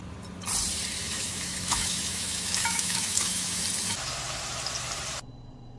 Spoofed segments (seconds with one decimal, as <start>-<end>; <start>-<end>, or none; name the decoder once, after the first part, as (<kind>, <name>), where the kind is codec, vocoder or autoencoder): 1.0-3.6 (autoencoder, DAC-VAE)